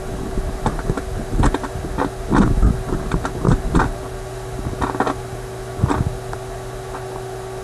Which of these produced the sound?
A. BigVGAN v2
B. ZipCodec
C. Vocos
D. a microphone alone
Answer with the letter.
D